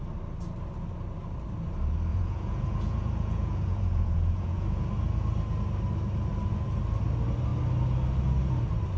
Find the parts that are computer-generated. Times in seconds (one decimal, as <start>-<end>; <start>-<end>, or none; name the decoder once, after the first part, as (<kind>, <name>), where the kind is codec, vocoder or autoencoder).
2.1-4.9 (vocoder, Vocos)